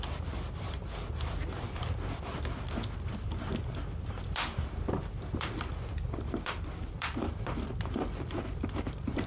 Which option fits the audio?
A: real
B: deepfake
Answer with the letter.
B